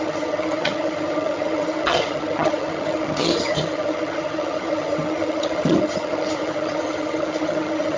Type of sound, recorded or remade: remade